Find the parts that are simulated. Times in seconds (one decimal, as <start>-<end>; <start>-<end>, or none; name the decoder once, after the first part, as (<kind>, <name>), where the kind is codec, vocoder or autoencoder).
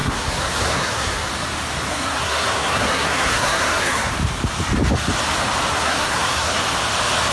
0.0-1.3 (codec, SNAC); 1.9-4.1; 5.7-6.6